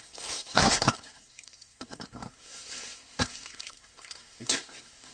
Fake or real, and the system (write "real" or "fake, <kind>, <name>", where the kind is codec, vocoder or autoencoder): fake, codec, SNAC